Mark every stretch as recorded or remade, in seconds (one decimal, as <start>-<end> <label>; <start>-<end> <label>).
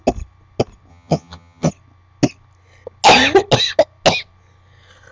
0.0-0.9 recorded; 0.9-1.7 remade; 1.7-5.1 recorded